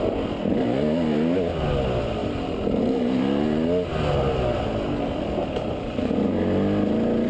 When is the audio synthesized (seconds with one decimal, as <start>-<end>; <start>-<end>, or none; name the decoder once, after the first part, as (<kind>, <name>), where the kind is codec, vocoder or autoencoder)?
2.2-3.2 (vocoder, BigVGAN v2)